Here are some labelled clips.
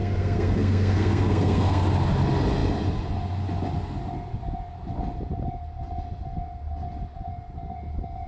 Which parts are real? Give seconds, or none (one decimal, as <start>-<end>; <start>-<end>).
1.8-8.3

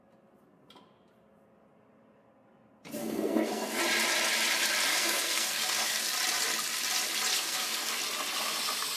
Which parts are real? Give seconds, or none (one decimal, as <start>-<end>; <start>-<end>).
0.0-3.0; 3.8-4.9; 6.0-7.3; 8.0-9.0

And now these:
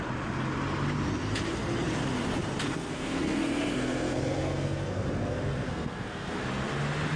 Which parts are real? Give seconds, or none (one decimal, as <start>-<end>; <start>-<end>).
0.0-2.6; 6.4-7.2

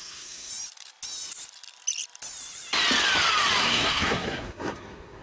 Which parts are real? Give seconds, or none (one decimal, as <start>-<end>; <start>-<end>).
0.5-3.6